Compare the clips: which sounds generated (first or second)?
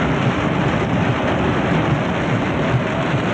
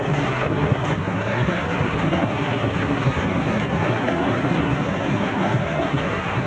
second